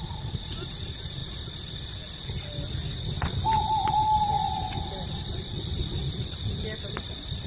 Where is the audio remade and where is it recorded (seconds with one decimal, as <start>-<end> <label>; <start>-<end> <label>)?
0.0-7.5 recorded